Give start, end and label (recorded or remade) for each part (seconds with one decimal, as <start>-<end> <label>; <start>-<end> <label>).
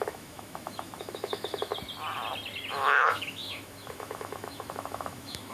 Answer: 0.0-1.7 remade; 1.7-2.7 recorded; 2.7-5.5 remade